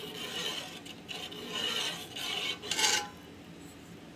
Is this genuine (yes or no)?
yes